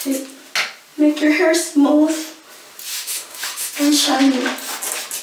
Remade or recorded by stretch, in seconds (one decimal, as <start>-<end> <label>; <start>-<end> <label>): 0.0-2.9 recorded; 2.9-4.2 remade; 4.2-5.2 recorded